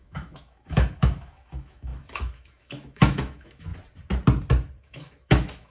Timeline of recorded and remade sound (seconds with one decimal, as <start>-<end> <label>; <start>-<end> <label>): 0.0-3.7 remade; 3.7-4.8 recorded; 4.8-5.7 remade